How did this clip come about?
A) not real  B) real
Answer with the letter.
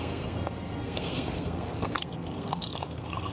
A